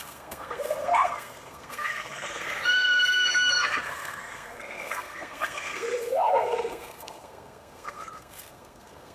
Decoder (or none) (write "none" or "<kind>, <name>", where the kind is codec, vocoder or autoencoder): codec, SNAC